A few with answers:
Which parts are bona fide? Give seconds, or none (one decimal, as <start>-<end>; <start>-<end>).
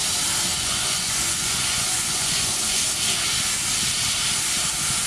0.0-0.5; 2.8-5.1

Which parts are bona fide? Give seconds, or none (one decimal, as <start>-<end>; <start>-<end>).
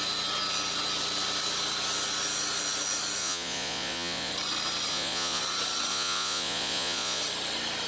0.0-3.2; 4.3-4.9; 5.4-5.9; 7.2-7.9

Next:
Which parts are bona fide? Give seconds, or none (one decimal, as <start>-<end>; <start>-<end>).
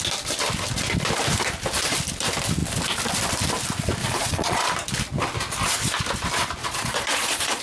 0.0-4.0; 4.6-6.6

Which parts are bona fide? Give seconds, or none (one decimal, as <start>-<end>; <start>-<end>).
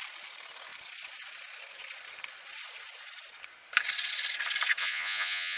0.0-4.8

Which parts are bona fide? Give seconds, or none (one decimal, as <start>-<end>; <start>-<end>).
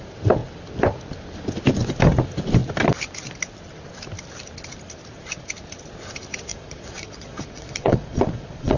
0.0-6.5